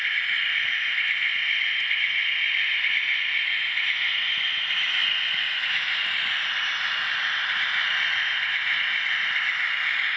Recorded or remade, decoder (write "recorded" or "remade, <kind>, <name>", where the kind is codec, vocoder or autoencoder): recorded